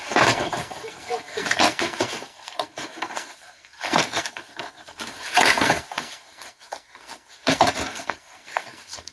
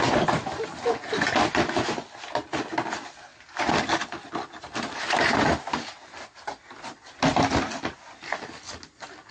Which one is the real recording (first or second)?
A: second